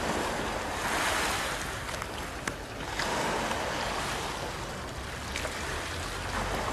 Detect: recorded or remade recorded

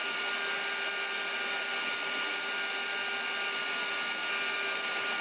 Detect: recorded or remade recorded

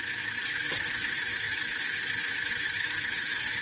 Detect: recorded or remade remade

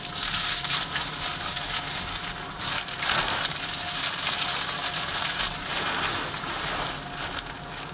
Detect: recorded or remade recorded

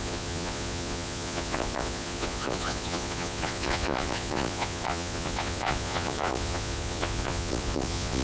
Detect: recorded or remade remade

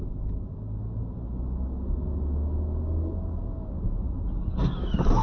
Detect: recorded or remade recorded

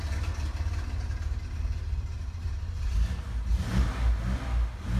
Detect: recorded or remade recorded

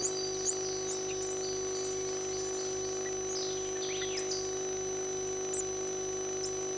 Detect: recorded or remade recorded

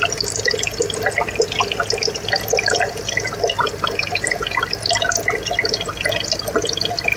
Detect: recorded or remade recorded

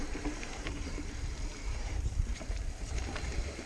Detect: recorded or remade remade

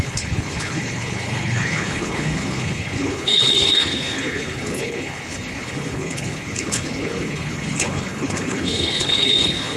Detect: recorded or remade remade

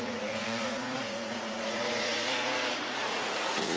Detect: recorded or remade remade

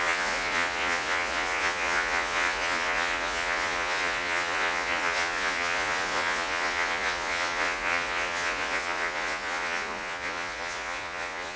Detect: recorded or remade remade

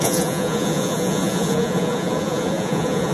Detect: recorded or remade remade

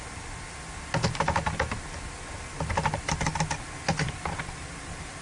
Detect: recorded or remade recorded